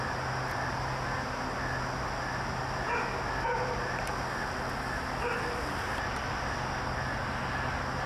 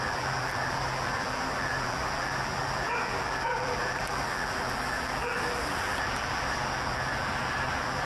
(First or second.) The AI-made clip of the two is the second